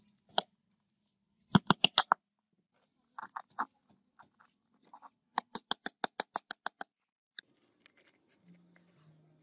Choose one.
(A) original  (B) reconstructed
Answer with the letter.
A